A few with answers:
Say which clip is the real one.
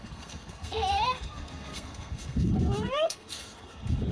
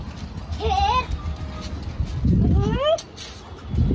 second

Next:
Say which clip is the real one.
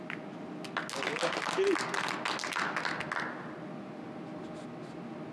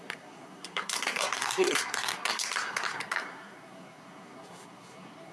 first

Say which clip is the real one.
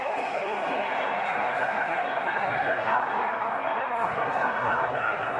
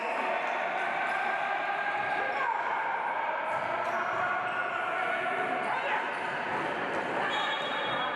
second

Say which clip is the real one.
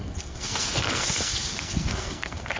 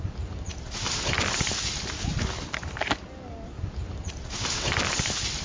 second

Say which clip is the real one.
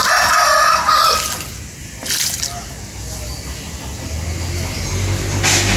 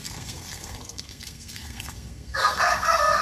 first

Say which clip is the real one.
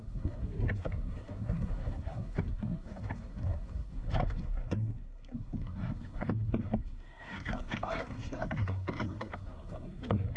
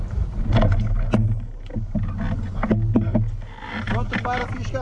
second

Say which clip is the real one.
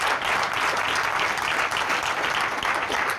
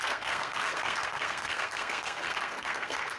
first